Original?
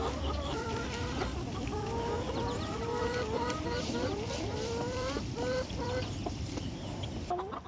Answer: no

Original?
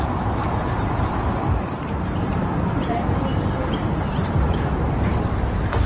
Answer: no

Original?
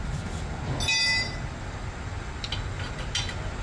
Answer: yes